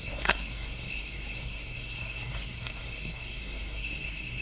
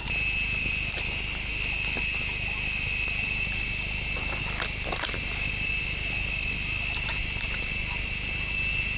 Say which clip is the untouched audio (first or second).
second